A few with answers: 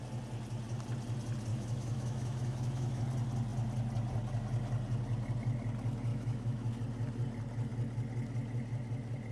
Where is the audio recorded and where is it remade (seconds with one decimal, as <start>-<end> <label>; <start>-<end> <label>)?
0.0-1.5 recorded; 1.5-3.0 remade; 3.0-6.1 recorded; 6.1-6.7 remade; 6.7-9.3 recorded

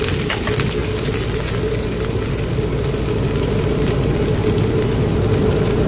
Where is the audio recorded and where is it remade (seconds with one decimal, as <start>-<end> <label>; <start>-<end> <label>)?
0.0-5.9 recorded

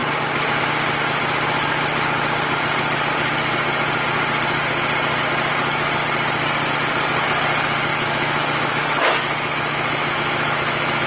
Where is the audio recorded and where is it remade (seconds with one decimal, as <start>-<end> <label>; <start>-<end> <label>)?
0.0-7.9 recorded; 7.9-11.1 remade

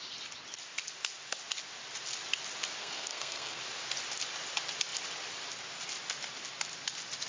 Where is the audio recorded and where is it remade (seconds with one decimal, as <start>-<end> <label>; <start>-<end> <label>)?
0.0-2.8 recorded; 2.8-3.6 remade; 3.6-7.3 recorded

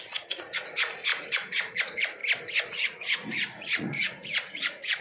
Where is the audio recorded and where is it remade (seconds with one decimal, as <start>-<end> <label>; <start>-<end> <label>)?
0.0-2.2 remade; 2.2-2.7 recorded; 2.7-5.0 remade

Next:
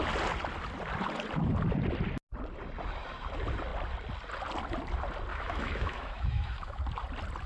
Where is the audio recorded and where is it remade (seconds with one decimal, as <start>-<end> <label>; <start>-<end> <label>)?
0.0-5.3 recorded; 5.3-6.8 remade; 6.8-7.5 recorded

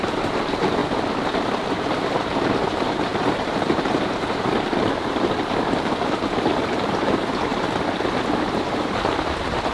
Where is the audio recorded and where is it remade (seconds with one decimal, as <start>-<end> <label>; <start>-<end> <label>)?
0.0-0.8 remade; 0.8-1.7 recorded; 1.7-7.5 remade; 7.5-8.4 recorded; 8.4-9.7 remade

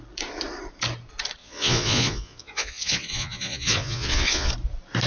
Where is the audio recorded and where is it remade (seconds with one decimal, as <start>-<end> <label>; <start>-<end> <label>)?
0.0-1.4 recorded; 1.4-4.5 remade; 4.5-5.1 recorded